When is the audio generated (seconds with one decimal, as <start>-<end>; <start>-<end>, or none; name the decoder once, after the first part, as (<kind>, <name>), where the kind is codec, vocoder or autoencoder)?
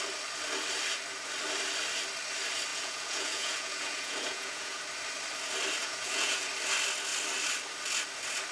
2.7-4.8 (vocoder, Vocos); 5.8-6.5